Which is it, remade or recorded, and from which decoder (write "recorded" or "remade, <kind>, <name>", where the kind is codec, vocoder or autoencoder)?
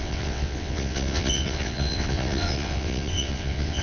remade, vocoder, WaveNeXt